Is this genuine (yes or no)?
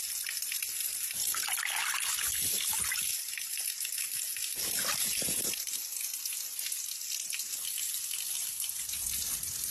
yes